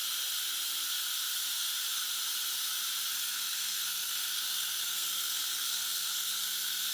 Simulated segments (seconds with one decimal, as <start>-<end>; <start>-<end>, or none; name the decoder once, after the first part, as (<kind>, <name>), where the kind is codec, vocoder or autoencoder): 3.1-6.9 (codec, SNAC)